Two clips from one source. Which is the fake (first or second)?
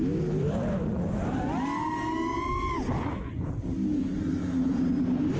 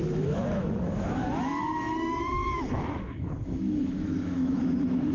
second